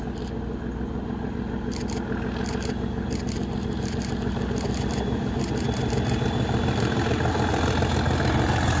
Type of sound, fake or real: real